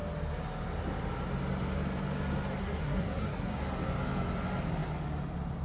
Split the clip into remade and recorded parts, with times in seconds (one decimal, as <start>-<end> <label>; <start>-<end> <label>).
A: 0.0-2.6 recorded; 2.6-3.6 remade; 3.6-5.6 recorded